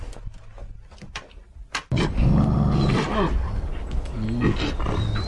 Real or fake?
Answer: real